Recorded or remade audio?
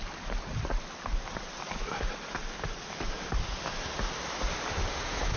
recorded